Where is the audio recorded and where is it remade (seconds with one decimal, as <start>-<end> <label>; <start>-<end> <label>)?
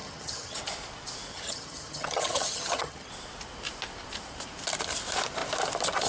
0.0-0.6 remade; 0.6-1.3 recorded; 1.3-3.1 remade; 3.1-6.1 recorded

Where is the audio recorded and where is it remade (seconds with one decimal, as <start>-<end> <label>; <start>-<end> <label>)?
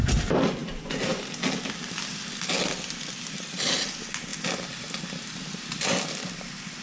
0.0-0.6 recorded; 0.6-1.3 remade; 1.3-6.8 recorded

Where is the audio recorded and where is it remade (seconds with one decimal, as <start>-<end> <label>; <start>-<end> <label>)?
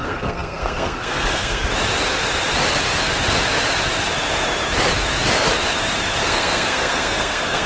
0.0-1.6 remade; 1.6-6.2 recorded; 6.2-7.7 remade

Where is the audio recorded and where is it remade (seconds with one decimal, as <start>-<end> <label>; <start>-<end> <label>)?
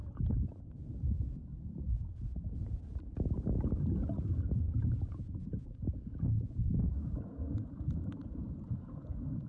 0.0-1.4 remade; 1.4-2.0 recorded; 2.0-2.9 remade; 2.9-4.3 recorded; 4.3-9.5 remade